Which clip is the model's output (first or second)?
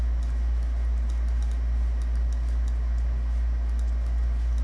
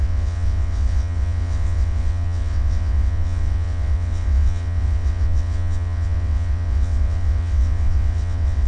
second